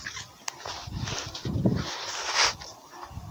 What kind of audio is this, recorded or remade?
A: recorded